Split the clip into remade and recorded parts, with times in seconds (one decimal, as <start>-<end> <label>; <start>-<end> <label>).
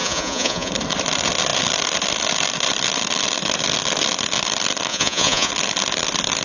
0.0-0.7 remade; 0.7-4.9 recorded; 4.9-5.5 remade; 5.5-6.4 recorded